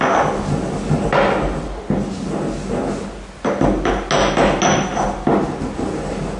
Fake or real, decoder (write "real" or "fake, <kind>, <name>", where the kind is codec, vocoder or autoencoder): real